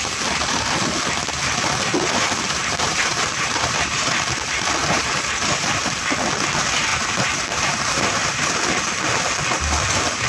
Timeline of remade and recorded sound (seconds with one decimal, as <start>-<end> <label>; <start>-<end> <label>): 0.0-2.6 recorded; 2.6-4.1 remade; 4.1-4.8 recorded; 4.8-5.8 remade; 5.8-6.9 recorded; 6.9-8.5 remade; 8.5-10.3 recorded